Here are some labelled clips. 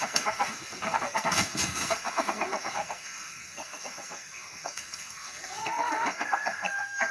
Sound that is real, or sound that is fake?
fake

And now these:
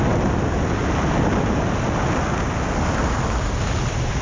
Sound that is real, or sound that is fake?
real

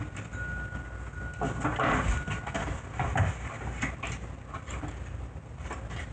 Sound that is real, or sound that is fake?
real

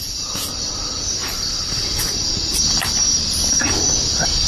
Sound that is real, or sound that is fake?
real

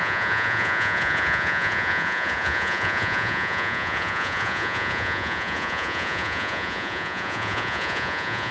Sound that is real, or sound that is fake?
fake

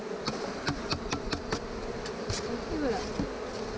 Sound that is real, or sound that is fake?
real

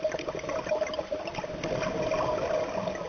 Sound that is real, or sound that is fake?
real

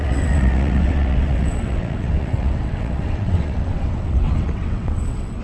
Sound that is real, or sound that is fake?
fake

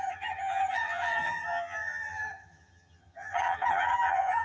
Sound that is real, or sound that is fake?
fake